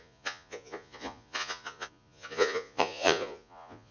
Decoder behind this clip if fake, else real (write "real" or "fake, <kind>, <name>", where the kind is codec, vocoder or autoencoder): fake, vocoder, Vocos